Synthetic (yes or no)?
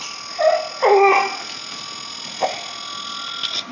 no